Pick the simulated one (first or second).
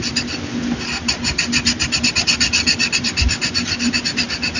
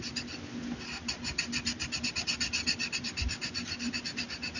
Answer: first